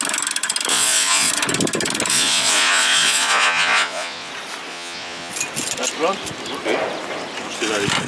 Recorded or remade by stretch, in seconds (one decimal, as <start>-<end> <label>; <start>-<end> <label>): 0.0-0.7 recorded; 0.7-1.3 remade; 1.3-2.1 recorded; 2.1-4.3 remade; 4.3-4.7 recorded; 4.7-5.3 remade; 5.3-8.1 recorded